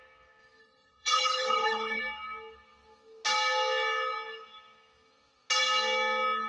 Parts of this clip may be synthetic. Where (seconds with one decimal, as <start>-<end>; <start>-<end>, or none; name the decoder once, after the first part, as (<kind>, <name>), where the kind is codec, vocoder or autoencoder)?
0.6-2.0 (codec, HILCodec)